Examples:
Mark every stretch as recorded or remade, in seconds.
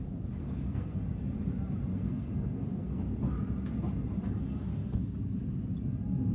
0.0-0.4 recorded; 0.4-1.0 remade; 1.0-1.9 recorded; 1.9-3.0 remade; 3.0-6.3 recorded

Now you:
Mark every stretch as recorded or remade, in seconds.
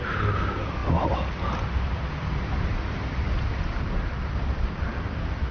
0.0-4.9 recorded; 4.9-5.5 remade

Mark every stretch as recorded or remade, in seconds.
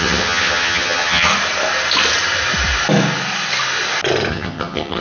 0.0-1.3 remade; 1.3-4.3 recorded; 4.3-5.0 remade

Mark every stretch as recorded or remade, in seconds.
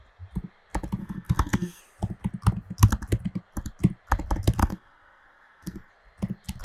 0.0-1.0 recorded; 1.0-1.8 remade; 1.8-4.6 recorded; 4.6-5.9 remade; 5.9-6.6 recorded